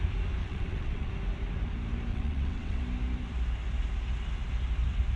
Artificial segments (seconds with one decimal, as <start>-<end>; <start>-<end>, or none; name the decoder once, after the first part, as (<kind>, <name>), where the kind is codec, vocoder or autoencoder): 0.4-1.1 (vocoder, WaveNeXt); 2.1-2.8